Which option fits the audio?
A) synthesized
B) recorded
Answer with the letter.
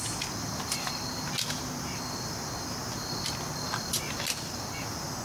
B